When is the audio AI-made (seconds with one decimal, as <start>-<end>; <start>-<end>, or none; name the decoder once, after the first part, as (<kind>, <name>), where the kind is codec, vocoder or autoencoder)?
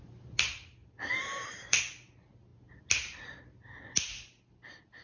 0.8-1.8 (vocoder, BigVGAN v2)